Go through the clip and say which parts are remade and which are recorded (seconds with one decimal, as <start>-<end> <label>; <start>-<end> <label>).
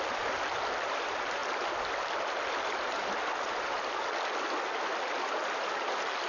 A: 0.0-6.3 recorded